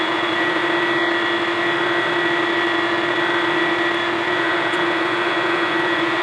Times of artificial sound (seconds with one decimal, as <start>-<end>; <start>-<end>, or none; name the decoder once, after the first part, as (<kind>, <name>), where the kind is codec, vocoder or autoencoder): 0.0-0.6 (vocoder, Vocos); 4.3-6.2